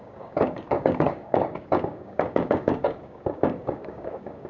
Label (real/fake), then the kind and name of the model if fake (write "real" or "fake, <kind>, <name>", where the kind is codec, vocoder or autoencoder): fake, codec, DAC